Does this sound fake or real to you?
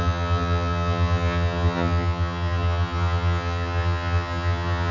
fake